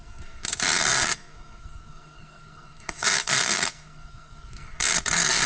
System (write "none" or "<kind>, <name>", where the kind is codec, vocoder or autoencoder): codec, SNAC